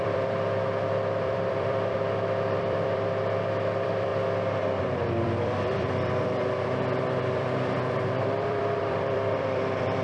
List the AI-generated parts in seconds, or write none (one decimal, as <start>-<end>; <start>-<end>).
0.0-4.1; 4.8-10.0